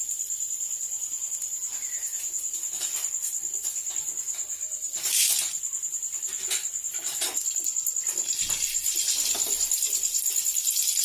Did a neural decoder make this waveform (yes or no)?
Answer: no